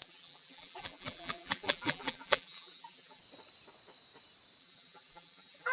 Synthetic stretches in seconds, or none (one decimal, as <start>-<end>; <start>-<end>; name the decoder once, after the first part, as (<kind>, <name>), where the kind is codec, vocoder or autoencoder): 0.0-3.2 (vocoder, BigVGAN v2); 4.6-5.7